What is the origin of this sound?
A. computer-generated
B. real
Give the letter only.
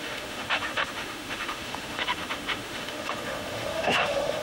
A